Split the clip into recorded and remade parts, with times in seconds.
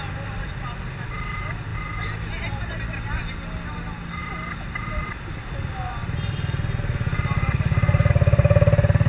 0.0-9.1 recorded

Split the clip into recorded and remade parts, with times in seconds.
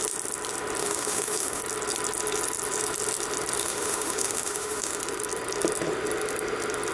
0.0-0.8 recorded; 0.8-1.6 remade; 1.6-3.6 recorded; 3.6-5.0 remade; 5.0-6.9 recorded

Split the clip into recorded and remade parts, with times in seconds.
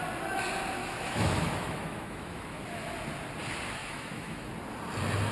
0.0-0.8 recorded; 0.8-2.6 remade; 2.6-3.8 recorded; 3.8-4.5 remade; 4.5-5.3 recorded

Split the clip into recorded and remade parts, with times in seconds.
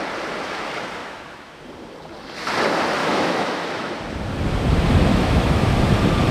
0.0-1.0 recorded; 1.0-1.6 remade; 1.6-3.0 recorded; 3.0-3.9 remade; 3.9-5.1 recorded; 5.1-5.7 remade; 5.7-6.3 recorded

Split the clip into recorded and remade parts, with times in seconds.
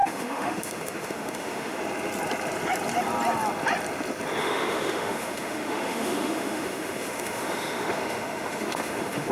0.0-1.8 remade; 1.8-4.4 recorded; 4.4-9.3 remade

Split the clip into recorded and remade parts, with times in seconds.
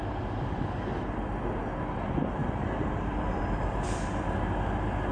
0.0-5.1 recorded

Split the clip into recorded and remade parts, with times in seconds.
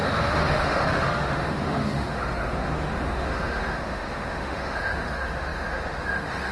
0.0-6.5 remade